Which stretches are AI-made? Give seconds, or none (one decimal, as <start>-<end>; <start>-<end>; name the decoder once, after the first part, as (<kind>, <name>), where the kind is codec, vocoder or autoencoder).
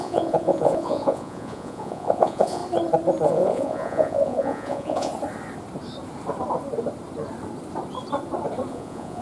0.0-2.6 (vocoder, Vocos); 3.3-5.1; 8.7-9.2